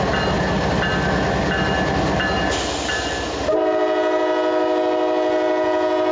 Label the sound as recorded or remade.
recorded